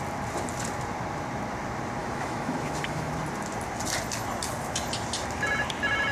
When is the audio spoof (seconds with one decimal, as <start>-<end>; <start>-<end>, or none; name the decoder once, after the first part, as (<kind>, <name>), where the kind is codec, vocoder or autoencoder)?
2.0-3.1 (autoencoder, DAC-VAE)